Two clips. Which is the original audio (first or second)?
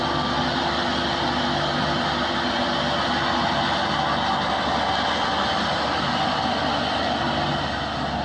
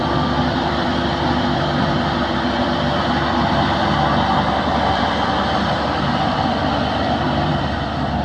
first